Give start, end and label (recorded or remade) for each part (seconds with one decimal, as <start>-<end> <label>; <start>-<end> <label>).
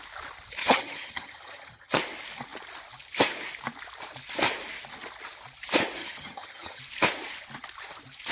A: 0.0-0.6 recorded; 0.6-2.0 remade; 2.0-6.0 recorded; 6.0-6.8 remade; 6.8-8.3 recorded